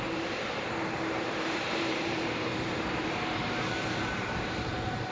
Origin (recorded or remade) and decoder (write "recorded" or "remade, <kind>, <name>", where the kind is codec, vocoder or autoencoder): remade, vocoder, BigVGAN v2